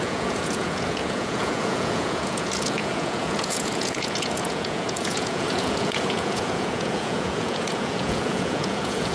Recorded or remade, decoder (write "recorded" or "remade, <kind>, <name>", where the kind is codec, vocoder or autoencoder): remade, vocoder, Vocos